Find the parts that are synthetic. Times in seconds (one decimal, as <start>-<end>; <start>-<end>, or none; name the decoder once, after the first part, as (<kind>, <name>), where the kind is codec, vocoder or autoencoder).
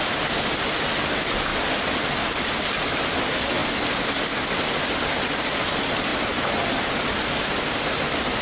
none